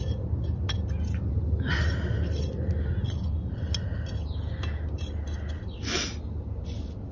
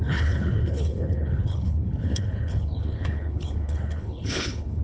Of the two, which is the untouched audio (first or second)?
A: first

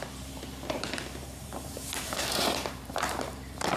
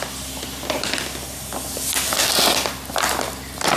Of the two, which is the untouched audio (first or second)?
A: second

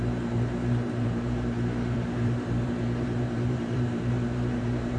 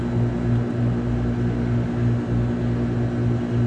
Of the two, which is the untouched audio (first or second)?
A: second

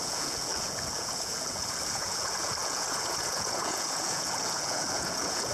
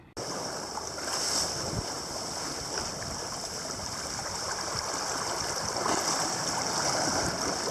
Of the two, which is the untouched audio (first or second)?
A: second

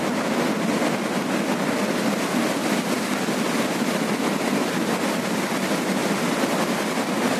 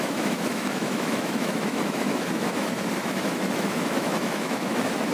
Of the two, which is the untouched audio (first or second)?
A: first